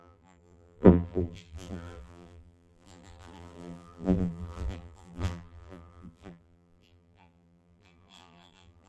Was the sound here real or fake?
fake